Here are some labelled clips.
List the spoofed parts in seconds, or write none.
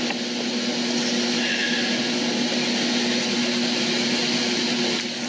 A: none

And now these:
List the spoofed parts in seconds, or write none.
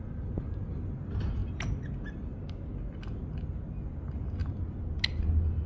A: none